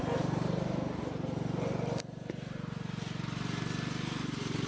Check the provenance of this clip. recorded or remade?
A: recorded